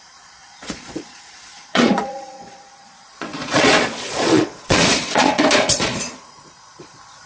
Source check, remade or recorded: remade